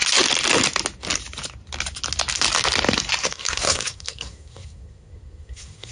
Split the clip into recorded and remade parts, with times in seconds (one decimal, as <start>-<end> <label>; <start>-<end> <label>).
0.0-3.2 recorded; 3.2-5.9 remade